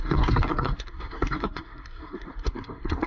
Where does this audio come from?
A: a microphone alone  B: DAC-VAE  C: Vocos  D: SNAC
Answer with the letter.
D